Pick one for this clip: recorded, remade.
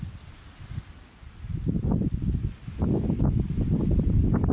recorded